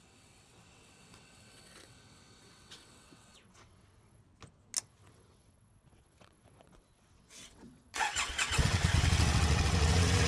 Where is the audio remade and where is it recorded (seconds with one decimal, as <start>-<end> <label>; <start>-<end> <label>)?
0.0-4.2 remade; 4.2-4.8 recorded; 4.8-10.3 remade